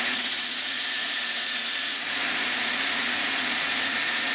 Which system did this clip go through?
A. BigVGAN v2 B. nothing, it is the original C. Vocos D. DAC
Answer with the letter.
C